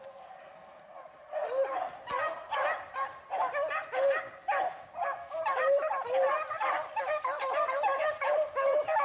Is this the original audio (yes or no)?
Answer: yes